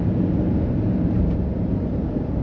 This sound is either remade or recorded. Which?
remade